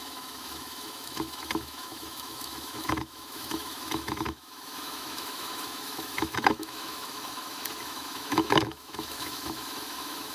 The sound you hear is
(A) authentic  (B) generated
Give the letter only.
B